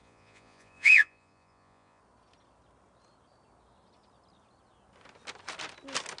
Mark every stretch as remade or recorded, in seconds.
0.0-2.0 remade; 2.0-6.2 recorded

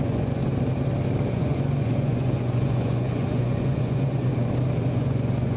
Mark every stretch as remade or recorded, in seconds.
0.0-0.4 remade; 0.4-1.3 recorded; 1.3-4.3 remade; 4.3-4.9 recorded; 4.9-5.6 remade

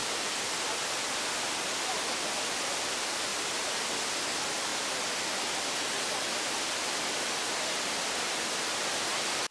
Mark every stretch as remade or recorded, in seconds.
0.0-9.5 recorded

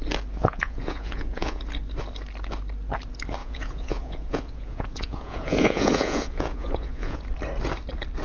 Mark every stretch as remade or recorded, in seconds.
0.0-0.4 recorded; 0.4-1.6 remade; 1.6-3.4 recorded; 3.4-7.2 remade; 7.2-8.2 recorded

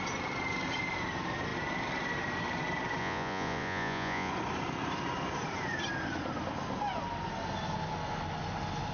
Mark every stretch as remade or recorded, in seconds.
0.0-3.0 recorded; 3.0-4.3 remade; 4.3-8.9 recorded

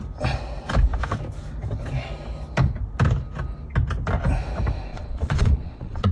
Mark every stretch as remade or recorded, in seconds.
0.0-4.9 recorded; 4.9-6.1 remade